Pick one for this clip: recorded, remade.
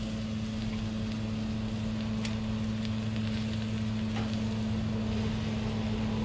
recorded